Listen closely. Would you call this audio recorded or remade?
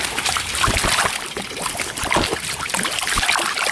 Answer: recorded